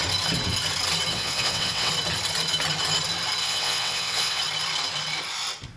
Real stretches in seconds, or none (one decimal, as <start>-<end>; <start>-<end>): 0.0-1.1; 1.9-3.4; 4.4-5.8